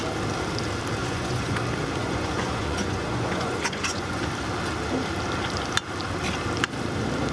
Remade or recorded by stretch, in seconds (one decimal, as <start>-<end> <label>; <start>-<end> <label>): 0.0-1.0 recorded; 1.0-1.6 remade; 1.6-2.0 recorded; 2.0-4.2 remade; 4.2-7.3 recorded